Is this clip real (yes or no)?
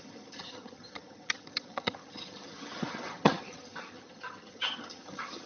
no